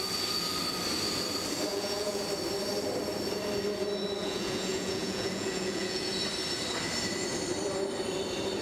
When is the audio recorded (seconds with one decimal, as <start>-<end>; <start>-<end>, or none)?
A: 0.0-1.7; 2.2-4.2; 6.2-8.6